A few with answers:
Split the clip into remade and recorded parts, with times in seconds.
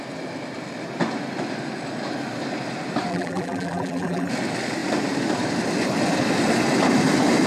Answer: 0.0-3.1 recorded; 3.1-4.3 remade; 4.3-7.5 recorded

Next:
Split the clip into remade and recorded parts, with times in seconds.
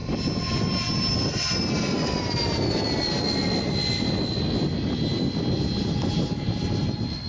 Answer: 0.0-7.3 recorded